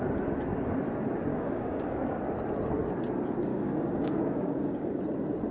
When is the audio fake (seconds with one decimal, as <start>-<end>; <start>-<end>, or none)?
1.3-2.2; 3.5-5.0